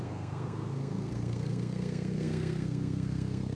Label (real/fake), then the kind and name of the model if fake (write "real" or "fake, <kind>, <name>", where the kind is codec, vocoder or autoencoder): fake, codec, SNAC